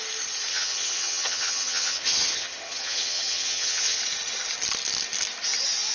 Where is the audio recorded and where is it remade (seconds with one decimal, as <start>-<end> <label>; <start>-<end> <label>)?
0.0-0.5 recorded; 0.5-4.0 remade; 4.0-5.9 recorded